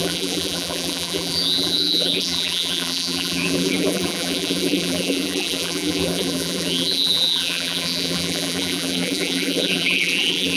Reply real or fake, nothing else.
fake